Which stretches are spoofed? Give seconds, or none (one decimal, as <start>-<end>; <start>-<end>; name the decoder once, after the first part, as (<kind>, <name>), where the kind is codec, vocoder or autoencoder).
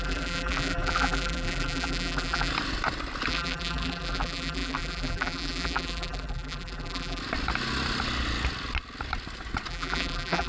0.0-2.5 (vocoder, BigVGAN v2); 3.3-7.2; 9.7-10.5